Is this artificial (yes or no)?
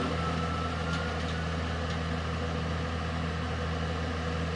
no